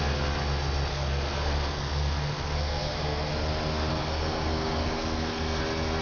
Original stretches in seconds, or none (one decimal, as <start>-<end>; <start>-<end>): 0.0-0.9; 3.3-3.9; 5.6-6.0